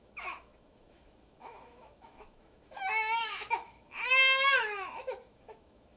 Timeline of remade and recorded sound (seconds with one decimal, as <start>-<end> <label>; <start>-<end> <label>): 0.0-6.0 remade